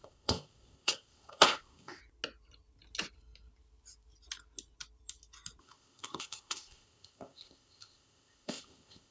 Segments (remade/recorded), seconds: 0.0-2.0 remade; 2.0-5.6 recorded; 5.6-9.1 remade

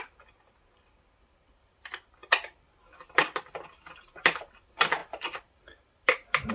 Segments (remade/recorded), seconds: 0.0-6.5 recorded

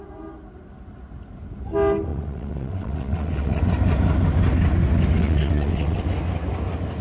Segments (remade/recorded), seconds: 0.0-2.1 recorded; 2.1-3.6 remade; 3.6-5.2 recorded; 5.2-6.0 remade; 6.0-7.0 recorded

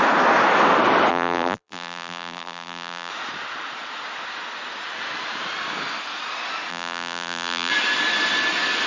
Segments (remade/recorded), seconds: 0.0-1.1 recorded; 1.1-3.1 remade; 3.1-6.7 recorded; 6.7-7.7 remade; 7.7-8.9 recorded